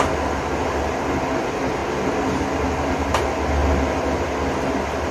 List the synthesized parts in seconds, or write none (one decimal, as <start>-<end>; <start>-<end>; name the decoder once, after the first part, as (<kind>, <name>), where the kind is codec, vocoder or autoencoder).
none